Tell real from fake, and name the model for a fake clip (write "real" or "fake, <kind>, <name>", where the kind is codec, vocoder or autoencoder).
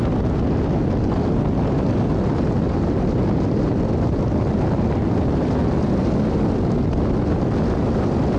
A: real